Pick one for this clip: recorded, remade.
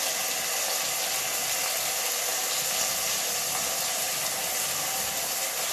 recorded